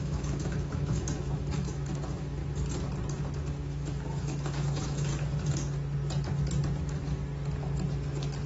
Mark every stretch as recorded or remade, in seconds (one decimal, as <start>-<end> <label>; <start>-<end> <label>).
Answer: 0.0-2.4 remade; 2.4-3.4 recorded; 3.4-5.1 remade; 5.1-6.8 recorded; 6.8-7.2 remade; 7.2-8.5 recorded